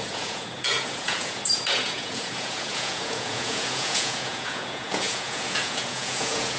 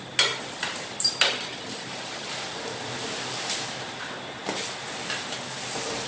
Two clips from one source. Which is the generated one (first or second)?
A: first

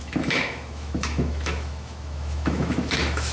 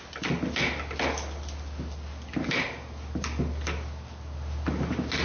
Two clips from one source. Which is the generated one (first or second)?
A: first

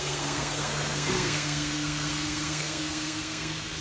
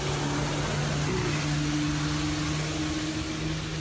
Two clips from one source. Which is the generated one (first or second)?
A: first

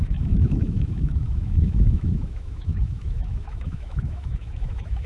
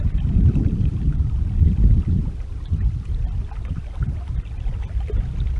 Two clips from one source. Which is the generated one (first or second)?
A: first